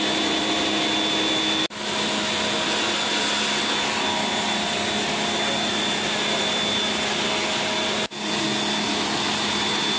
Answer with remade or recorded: recorded